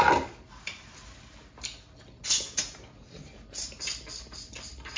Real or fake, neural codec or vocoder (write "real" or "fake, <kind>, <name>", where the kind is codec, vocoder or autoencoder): real